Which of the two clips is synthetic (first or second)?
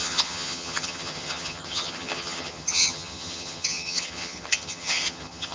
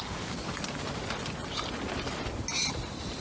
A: first